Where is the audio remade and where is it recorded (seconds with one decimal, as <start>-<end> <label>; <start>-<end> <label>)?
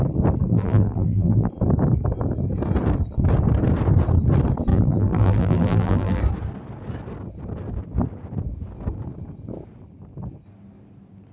0.0-0.5 recorded; 0.5-1.5 remade; 1.5-4.7 recorded; 4.7-6.2 remade; 6.2-11.3 recorded